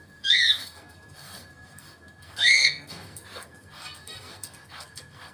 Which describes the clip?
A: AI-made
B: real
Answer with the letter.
A